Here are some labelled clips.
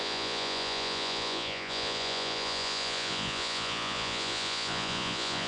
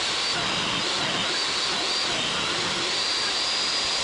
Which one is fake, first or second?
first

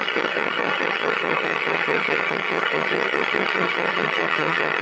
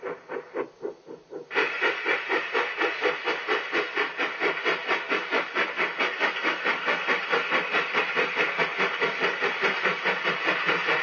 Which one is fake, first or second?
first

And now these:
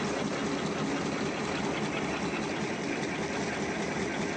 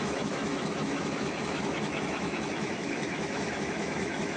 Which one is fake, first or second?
second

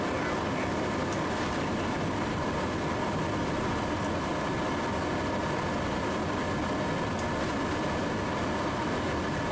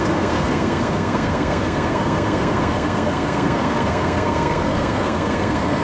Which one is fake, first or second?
second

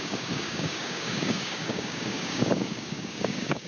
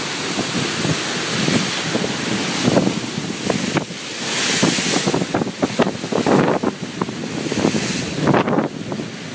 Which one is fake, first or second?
first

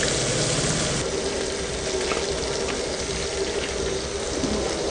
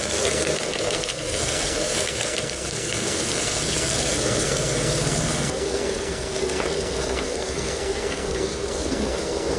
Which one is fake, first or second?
second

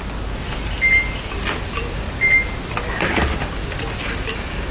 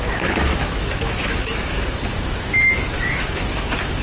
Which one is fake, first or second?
second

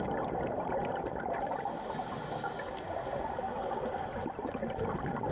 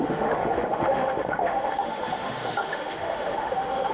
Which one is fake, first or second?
second